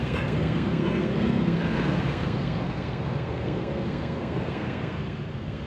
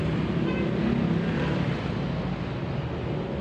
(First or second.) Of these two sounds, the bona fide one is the second